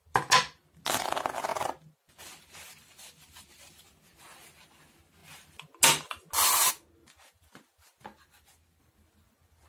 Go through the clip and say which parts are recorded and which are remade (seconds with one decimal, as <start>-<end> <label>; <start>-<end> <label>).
0.0-9.7 recorded